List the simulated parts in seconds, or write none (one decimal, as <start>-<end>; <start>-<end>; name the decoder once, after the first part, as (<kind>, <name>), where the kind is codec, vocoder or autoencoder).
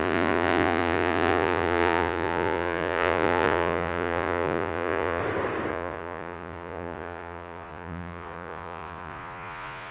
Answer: 0.0-5.2 (vocoder, Vocos); 5.7-9.9